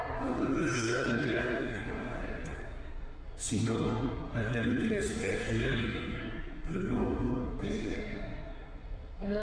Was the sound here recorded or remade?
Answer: remade